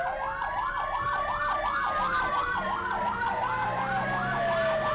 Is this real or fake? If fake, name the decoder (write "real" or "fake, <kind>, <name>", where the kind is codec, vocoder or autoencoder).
real